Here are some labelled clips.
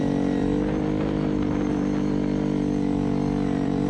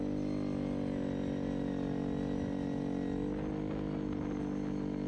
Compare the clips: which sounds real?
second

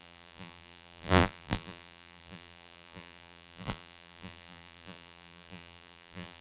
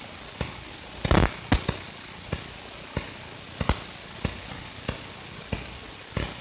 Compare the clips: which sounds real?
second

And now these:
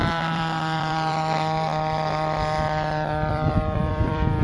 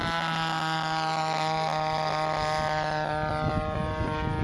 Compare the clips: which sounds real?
second